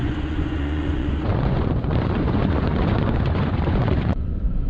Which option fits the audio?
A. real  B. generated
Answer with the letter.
B